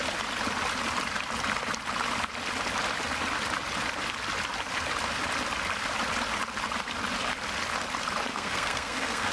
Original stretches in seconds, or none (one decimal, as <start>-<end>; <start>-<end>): 0.0-8.3